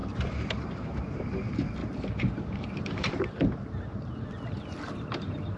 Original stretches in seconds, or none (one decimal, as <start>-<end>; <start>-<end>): 1.0-1.8